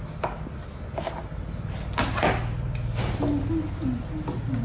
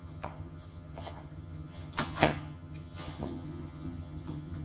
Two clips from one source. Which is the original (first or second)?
first